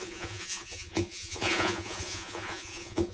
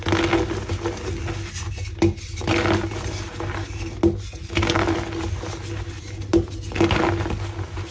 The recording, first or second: second